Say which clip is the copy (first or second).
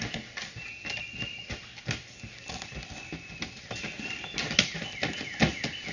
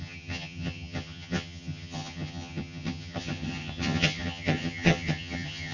second